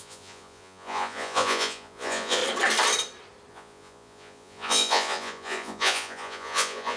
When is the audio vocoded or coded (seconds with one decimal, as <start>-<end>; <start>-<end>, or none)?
0.0-2.4; 3.5-7.0